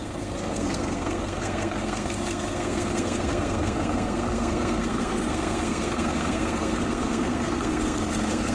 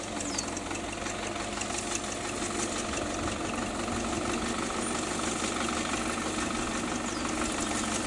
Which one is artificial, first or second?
first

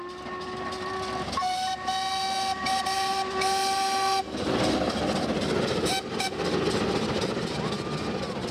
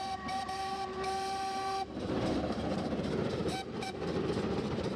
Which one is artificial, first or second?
second